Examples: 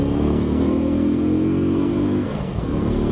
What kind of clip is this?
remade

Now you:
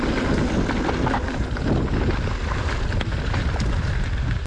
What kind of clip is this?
recorded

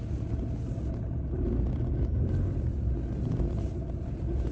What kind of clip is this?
recorded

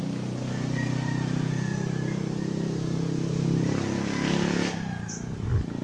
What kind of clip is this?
recorded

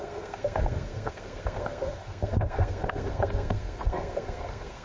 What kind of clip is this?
remade